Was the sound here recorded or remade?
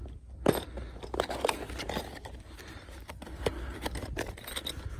recorded